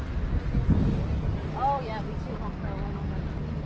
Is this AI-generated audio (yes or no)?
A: no